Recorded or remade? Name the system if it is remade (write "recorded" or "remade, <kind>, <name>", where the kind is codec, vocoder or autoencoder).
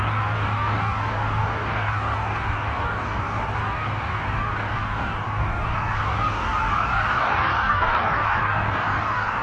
remade, codec, DAC